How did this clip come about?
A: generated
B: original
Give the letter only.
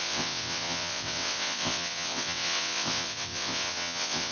A